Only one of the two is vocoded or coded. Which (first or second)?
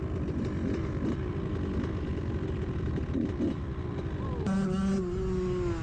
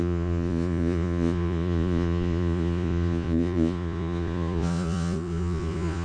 second